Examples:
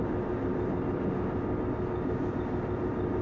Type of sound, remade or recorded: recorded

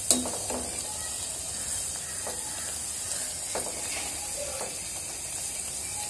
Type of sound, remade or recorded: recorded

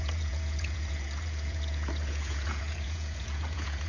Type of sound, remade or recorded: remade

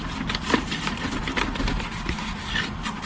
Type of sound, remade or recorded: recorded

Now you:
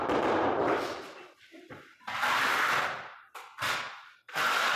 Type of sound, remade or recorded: recorded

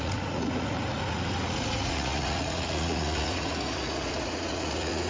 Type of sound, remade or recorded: remade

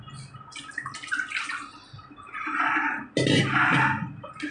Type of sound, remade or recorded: recorded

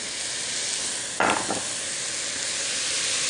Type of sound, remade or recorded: recorded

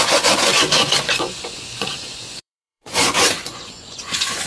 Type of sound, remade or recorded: remade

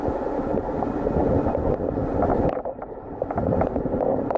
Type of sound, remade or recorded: recorded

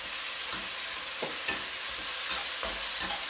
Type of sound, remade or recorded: recorded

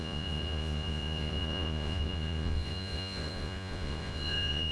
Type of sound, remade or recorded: remade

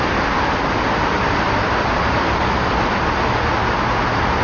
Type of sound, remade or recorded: recorded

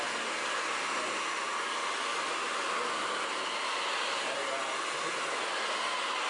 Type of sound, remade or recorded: recorded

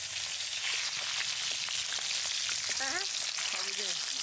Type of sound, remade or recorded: recorded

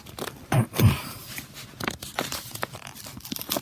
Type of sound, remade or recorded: recorded